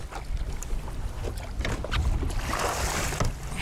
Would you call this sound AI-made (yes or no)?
no